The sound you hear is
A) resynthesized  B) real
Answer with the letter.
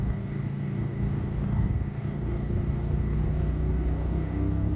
A